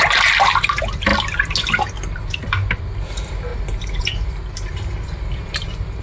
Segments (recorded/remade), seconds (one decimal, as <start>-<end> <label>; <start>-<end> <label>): 0.0-6.0 recorded

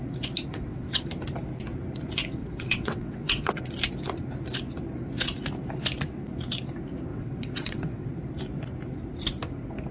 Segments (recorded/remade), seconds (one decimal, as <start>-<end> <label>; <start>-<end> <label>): 0.0-0.5 recorded; 0.5-1.0 remade; 1.0-2.4 recorded; 2.4-3.6 remade; 3.6-7.1 recorded; 7.1-8.1 remade; 8.1-9.9 recorded

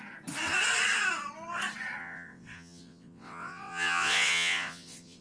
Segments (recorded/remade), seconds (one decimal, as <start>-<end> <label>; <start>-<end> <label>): 0.0-2.0 recorded; 2.0-5.2 remade

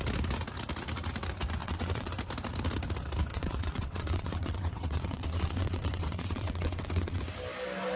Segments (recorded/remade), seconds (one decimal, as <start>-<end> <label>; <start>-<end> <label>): 0.0-1.6 recorded; 1.6-2.1 remade; 2.1-3.3 recorded; 3.3-7.2 remade; 7.2-8.0 recorded